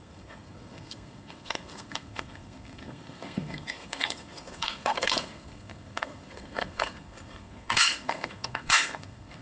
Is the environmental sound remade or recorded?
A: remade